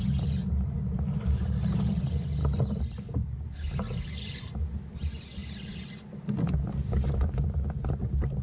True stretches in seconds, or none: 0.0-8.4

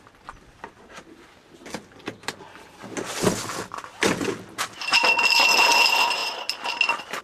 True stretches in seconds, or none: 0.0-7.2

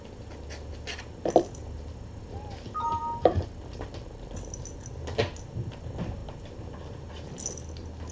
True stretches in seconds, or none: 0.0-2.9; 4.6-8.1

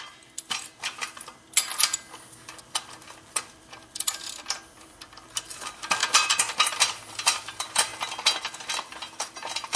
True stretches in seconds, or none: 1.7-2.8; 6.0-6.5; 7.9-8.7